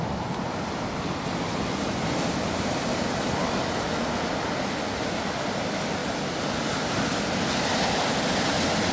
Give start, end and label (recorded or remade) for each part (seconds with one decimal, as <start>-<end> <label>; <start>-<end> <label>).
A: 0.0-8.9 recorded